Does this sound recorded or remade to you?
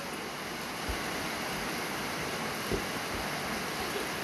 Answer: recorded